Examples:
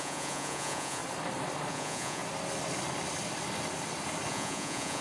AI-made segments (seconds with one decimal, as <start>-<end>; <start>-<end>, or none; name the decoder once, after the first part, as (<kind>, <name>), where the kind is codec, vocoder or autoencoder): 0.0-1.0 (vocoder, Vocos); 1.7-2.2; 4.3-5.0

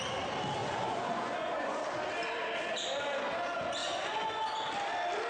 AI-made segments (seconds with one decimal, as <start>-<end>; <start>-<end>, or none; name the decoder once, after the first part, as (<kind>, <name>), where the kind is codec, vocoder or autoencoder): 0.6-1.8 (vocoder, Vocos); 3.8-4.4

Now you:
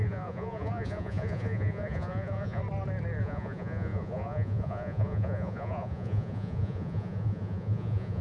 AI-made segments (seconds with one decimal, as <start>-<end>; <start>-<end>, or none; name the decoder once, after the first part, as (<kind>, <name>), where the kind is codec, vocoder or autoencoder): 0.0-2.6 (vocoder, Vocos); 3.2-8.2

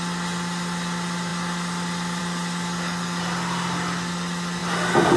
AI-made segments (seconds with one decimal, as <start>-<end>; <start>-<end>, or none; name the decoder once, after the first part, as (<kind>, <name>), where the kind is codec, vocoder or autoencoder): none

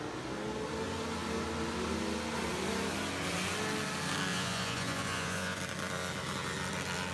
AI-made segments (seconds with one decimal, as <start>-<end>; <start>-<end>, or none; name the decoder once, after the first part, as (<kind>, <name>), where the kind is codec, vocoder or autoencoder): 4.3-5.6 (vocoder, Vocos)

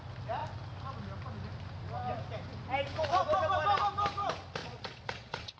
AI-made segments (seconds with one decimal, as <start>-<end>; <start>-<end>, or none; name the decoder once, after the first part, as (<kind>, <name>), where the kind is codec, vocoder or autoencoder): 4.6-5.6 (vocoder, Vocos)

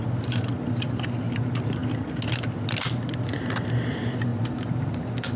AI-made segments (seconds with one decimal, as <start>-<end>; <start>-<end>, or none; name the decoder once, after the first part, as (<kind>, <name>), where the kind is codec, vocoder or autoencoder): none